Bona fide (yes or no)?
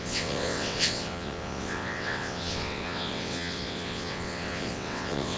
no